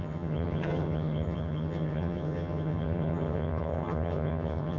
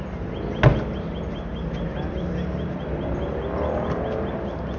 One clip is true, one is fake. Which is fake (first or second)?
first